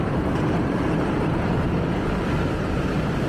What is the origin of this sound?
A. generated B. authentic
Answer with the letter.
A